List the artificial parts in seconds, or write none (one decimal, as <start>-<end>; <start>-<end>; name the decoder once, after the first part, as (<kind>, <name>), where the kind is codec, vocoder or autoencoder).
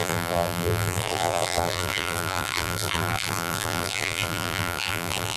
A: 0.0-5.4 (vocoder, BigVGAN v2)